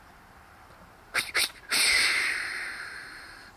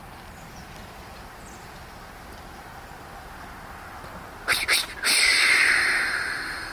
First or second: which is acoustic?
second